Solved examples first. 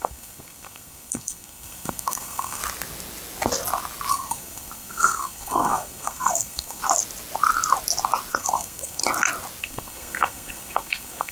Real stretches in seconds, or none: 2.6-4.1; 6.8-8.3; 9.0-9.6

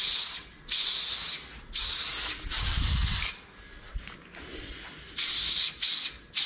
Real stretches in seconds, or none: 0.0-6.5

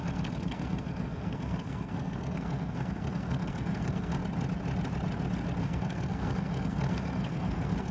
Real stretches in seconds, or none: 4.2-5.6